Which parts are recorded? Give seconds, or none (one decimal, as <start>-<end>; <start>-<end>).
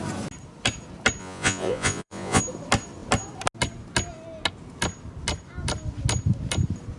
0.0-1.2; 2.4-7.0